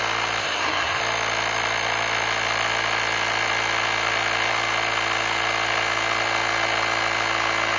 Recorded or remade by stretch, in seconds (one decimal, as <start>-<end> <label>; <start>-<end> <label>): 0.0-0.4 recorded; 0.4-1.0 remade; 1.0-7.8 recorded